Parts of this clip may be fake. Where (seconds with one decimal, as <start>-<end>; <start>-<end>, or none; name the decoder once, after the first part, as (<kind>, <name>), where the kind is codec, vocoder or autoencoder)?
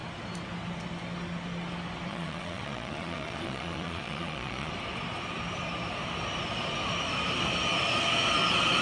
2.1-4.7 (vocoder, Vocos)